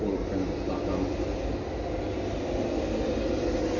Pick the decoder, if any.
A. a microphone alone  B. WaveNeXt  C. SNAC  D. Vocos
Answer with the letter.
A